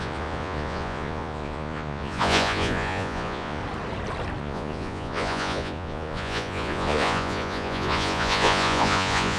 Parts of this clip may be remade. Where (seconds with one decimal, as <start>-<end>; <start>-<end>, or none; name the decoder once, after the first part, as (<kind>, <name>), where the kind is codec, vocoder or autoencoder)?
0.0-3.6 (vocoder, Vocos); 4.4-9.4